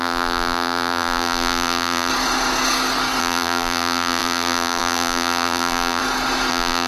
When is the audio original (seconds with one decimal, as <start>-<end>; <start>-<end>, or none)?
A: 2.1-3.2; 6.0-6.5